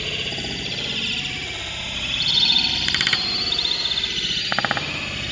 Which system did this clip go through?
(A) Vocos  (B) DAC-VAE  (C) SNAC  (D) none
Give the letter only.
D